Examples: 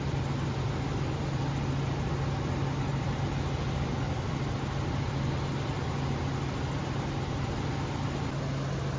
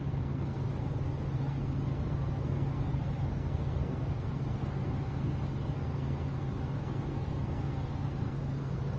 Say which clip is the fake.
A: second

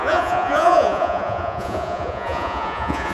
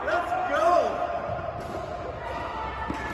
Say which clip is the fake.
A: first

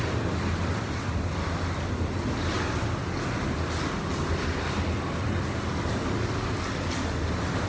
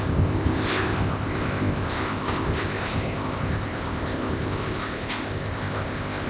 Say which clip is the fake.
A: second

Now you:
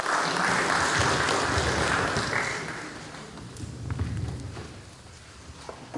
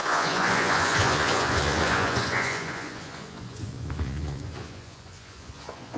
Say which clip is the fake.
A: second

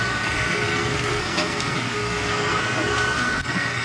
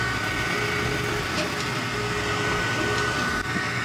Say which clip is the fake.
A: first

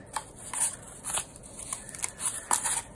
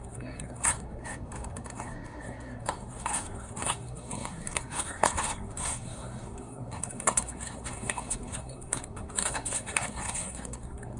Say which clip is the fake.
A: second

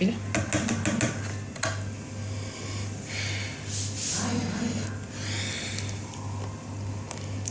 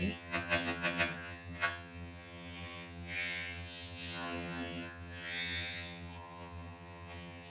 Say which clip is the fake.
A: second